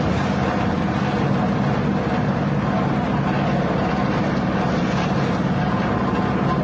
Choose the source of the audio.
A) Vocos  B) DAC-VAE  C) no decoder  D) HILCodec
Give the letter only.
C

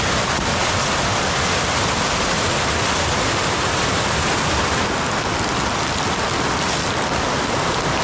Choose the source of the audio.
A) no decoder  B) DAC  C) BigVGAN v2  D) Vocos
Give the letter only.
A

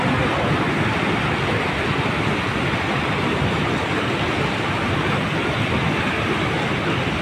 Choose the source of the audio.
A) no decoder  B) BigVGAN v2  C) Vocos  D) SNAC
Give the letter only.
A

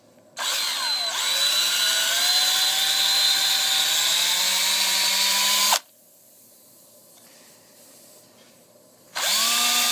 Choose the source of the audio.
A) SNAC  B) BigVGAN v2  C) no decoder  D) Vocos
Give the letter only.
C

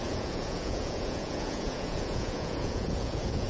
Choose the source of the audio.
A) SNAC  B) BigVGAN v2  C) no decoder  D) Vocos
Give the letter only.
D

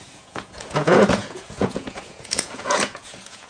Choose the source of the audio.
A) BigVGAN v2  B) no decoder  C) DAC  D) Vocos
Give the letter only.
D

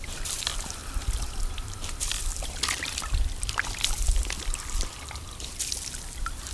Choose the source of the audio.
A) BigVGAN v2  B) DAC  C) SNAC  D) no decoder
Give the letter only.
D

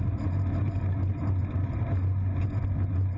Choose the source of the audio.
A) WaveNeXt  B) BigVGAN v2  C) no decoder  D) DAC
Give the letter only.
C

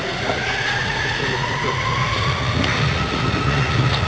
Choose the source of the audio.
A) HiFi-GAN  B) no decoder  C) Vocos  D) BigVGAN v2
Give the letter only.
C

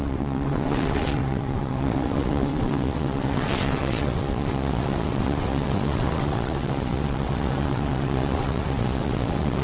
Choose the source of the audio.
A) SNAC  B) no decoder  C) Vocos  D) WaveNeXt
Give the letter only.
D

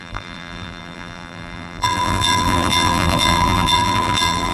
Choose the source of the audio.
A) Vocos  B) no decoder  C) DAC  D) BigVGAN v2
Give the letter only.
D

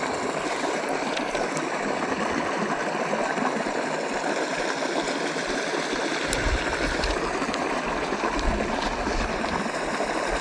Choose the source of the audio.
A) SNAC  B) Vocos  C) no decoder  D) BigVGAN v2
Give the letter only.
C